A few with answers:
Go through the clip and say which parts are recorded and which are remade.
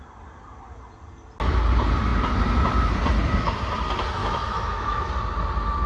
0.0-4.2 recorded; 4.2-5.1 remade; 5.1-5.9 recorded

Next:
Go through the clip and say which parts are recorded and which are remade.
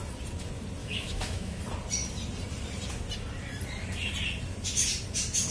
0.0-0.8 recorded; 0.8-1.6 remade; 1.6-5.5 recorded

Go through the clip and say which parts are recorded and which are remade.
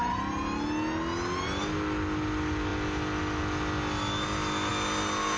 0.0-5.4 recorded